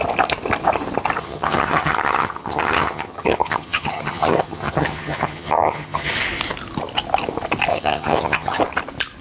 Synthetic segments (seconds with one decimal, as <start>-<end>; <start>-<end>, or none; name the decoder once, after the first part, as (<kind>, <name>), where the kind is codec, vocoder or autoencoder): 1.2-6.1 (vocoder, HiFi-GAN); 7.7-8.6